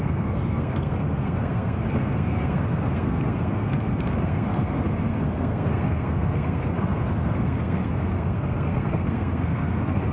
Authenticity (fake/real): fake